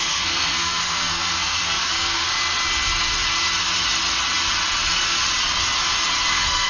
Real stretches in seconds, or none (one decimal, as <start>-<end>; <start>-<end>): 2.3-6.3